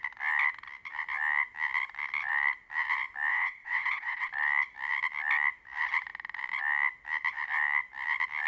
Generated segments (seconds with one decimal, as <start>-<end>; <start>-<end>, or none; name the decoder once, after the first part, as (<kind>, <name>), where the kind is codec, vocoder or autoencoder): 3.3-4.3 (vocoder, WaveNeXt)